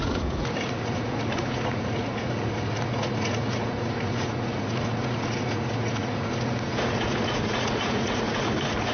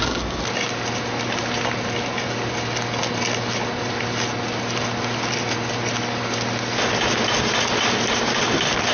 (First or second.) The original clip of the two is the second